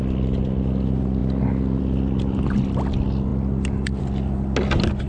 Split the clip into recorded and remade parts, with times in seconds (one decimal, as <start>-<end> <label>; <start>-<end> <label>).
0.0-5.1 recorded